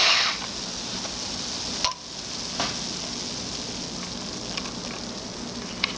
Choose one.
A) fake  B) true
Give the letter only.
B